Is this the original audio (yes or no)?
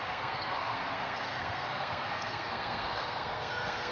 no